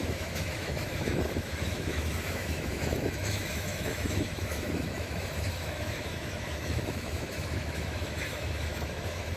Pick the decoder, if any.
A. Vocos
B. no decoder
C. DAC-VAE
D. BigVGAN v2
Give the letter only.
C